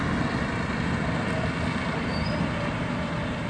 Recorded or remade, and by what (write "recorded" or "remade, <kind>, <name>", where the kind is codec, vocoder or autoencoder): recorded